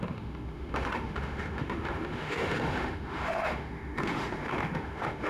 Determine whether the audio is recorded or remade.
remade